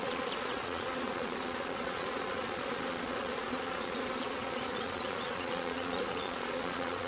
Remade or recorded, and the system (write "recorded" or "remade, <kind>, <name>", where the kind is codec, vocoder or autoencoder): remade, vocoder, Vocos